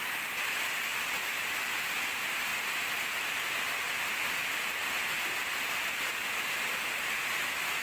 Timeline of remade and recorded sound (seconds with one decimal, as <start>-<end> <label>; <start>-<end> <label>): 0.0-7.8 recorded